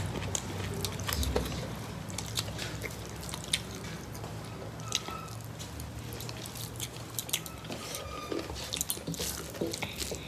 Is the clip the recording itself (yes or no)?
yes